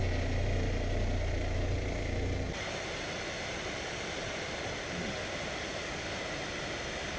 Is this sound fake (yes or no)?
no